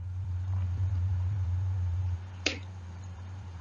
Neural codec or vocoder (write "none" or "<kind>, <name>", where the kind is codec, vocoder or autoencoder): vocoder, BigVGAN v2